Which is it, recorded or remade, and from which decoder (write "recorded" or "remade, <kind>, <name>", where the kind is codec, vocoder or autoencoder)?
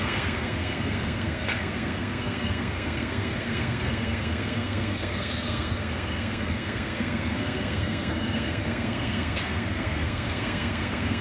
remade, codec, SNAC